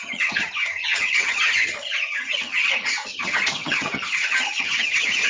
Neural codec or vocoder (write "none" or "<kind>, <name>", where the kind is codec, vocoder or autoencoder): vocoder, HiFi-GAN